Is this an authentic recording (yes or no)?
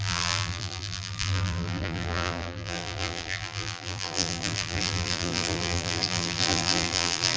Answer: no